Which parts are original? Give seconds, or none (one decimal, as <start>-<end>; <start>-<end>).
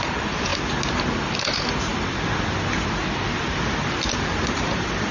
0.5-1.3; 1.9-4.3